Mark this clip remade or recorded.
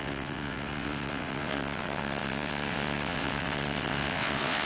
remade